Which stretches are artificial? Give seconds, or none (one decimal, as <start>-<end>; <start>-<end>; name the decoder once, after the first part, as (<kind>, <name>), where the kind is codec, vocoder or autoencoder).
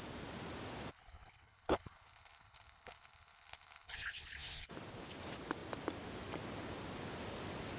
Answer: 0.9-4.7 (codec, HILCodec)